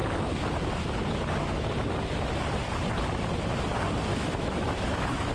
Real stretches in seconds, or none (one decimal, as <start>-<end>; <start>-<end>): 0.0-4.1